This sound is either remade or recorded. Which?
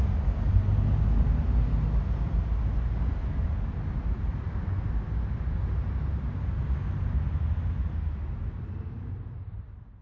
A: recorded